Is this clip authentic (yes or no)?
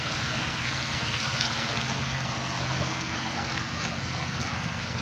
no